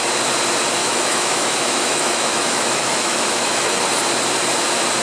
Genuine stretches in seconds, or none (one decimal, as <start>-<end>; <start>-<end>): 0.0-0.8; 3.8-5.0